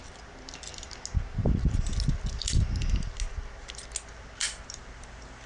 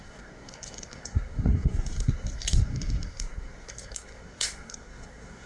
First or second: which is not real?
second